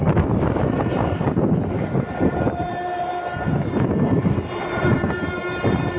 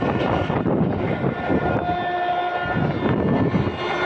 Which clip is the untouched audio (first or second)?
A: second